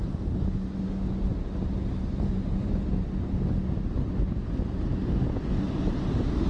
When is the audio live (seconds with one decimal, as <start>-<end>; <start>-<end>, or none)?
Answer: 0.0-6.5